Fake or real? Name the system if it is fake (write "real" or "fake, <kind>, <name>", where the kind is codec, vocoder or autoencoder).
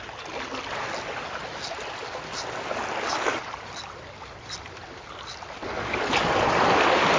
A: real